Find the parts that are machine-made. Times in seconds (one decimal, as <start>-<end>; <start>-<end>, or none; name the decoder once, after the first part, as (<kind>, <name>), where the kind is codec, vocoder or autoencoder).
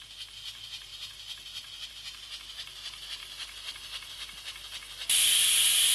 none